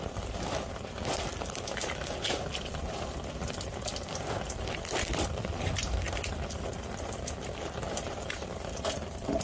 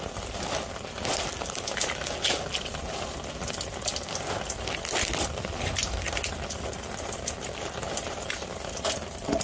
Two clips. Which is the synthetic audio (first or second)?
first